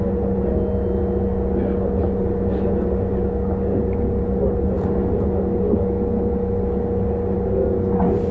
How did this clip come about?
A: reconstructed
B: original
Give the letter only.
B